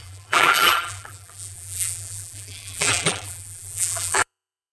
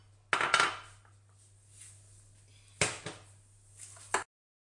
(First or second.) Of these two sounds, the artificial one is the first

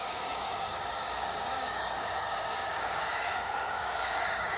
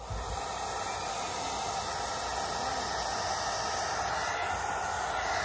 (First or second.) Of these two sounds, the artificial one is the first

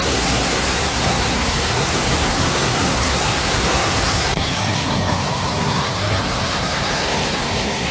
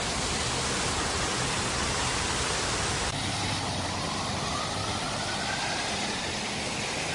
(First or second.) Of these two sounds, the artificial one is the first